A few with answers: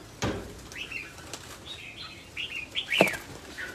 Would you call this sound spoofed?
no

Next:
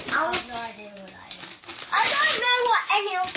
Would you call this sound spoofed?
yes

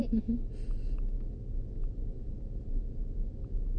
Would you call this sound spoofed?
no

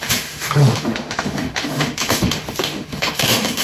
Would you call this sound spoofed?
yes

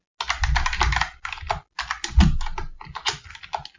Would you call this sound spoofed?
no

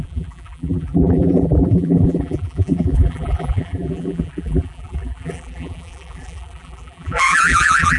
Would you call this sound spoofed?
yes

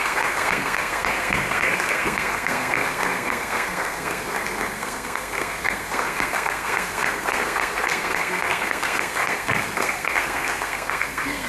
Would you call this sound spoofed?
yes